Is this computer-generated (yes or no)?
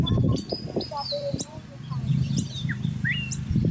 yes